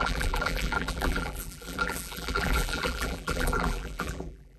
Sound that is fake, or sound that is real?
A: fake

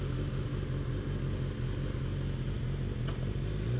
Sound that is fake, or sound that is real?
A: real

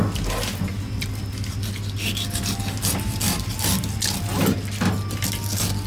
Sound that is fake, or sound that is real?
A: real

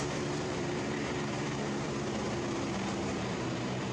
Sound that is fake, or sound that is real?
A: fake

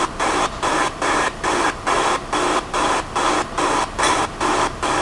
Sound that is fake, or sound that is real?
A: fake